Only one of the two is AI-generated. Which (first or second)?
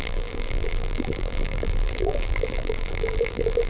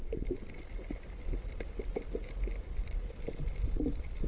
first